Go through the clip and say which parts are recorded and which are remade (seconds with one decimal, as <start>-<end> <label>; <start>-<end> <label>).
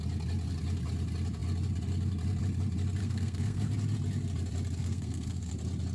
0.0-3.0 recorded; 3.0-3.7 remade; 3.7-4.8 recorded; 4.8-5.5 remade; 5.5-5.9 recorded